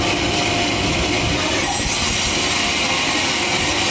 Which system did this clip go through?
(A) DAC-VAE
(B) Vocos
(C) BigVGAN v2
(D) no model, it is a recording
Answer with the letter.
D